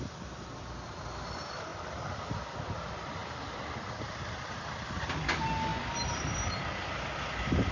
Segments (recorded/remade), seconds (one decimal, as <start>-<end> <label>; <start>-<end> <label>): 0.0-1.7 recorded; 1.7-2.3 remade; 2.3-3.2 recorded; 3.2-5.3 remade; 5.3-5.7 recorded; 5.7-6.6 remade; 6.6-7.7 recorded